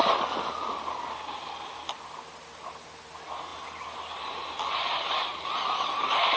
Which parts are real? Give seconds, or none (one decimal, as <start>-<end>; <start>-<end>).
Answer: 0.0-6.4